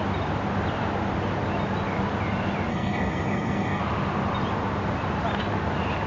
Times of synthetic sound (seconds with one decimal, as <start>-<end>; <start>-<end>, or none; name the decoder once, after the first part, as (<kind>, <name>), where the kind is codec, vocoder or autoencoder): 2.7-3.8 (codec, SNAC)